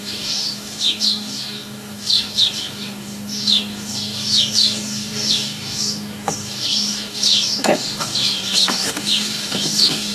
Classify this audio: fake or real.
fake